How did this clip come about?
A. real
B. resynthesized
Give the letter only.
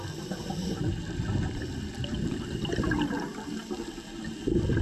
A